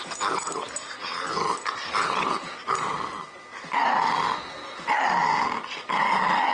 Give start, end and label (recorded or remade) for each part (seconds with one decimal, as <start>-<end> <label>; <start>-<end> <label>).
0.0-6.5 recorded